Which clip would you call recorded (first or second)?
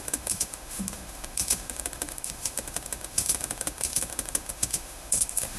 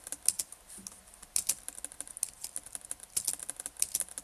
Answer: second